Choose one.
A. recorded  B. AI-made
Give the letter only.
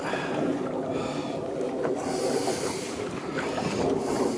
A